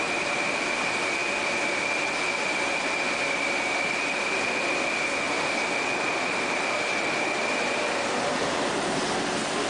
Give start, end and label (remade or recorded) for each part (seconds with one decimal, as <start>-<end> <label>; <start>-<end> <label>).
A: 0.0-9.7 recorded